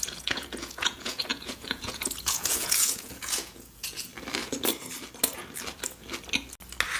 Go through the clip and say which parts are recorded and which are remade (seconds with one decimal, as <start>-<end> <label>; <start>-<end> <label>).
0.0-4.1 remade; 4.1-7.0 recorded